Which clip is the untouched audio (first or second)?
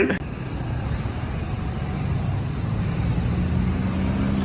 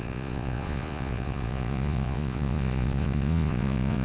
first